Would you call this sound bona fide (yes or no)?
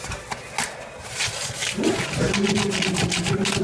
yes